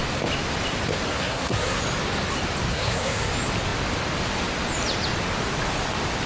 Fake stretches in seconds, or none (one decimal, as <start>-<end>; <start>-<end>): 1.1-1.8; 2.7-3.3